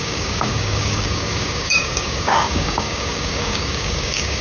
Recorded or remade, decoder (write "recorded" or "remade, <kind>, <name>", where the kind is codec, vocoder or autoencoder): remade, codec, DAC